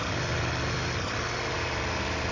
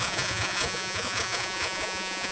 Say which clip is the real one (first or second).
first